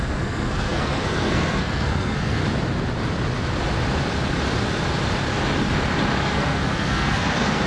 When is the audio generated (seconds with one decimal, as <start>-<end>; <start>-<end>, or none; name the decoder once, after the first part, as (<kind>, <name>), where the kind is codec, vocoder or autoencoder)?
0.0-2.4 (codec, SNAC); 6.2-7.7